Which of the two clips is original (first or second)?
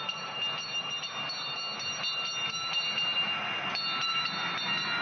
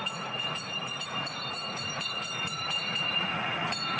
first